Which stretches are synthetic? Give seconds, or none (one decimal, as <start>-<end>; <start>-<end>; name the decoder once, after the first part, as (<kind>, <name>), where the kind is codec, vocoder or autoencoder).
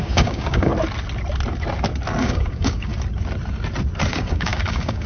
0.0-0.7 (codec, DAC); 2.2-2.9; 4.1-5.1